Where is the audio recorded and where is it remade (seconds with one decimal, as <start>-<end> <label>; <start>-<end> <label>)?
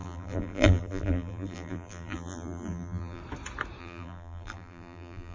0.0-3.2 remade; 3.2-3.8 recorded; 3.8-5.3 remade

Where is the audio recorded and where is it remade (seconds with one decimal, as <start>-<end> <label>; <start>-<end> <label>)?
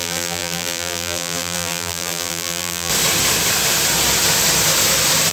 0.0-2.9 remade; 2.9-5.3 recorded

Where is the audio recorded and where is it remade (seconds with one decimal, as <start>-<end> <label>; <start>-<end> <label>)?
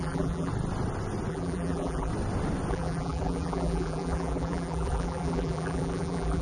0.0-0.5 remade; 0.5-1.3 recorded; 1.3-2.1 remade; 2.1-2.7 recorded; 2.7-6.4 remade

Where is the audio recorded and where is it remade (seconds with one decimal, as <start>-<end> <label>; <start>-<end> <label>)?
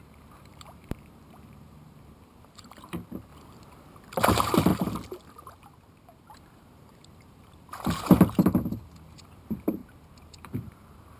0.0-3.3 remade; 3.3-4.3 recorded; 4.3-4.7 remade; 4.7-6.3 recorded; 6.3-11.2 remade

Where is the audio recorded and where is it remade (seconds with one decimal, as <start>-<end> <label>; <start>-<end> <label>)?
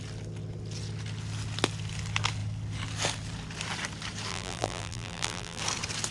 0.0-4.3 recorded; 4.3-5.6 remade; 5.6-6.1 recorded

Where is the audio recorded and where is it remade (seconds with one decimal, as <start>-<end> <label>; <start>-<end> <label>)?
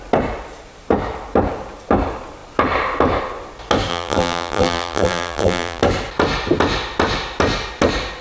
0.0-3.9 recorded; 3.9-5.8 remade; 5.8-8.2 recorded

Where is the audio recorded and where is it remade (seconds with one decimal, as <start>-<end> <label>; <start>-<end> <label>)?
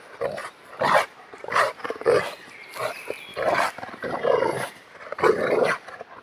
0.0-0.4 recorded; 0.4-1.7 remade; 1.7-3.3 recorded; 3.3-4.3 remade; 4.3-6.2 recorded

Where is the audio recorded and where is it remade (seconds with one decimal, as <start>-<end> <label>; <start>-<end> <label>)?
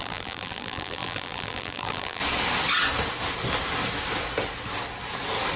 0.0-2.2 remade; 2.2-5.6 recorded